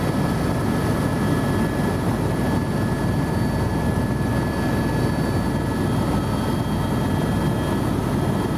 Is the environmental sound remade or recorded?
recorded